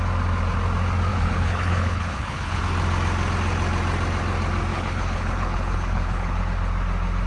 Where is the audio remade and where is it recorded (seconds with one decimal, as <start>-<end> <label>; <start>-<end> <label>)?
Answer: 0.0-1.1 recorded; 1.1-2.6 remade; 2.6-4.7 recorded; 4.7-6.4 remade; 6.4-7.3 recorded